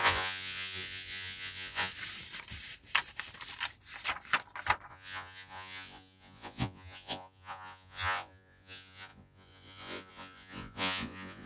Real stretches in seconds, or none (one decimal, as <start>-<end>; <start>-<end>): 1.9-4.9